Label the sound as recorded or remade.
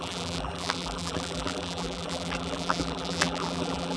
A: remade